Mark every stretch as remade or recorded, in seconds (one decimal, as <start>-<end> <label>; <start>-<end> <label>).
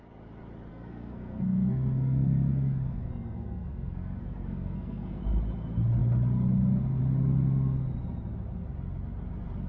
0.0-0.7 recorded; 0.7-5.2 remade; 5.2-9.7 recorded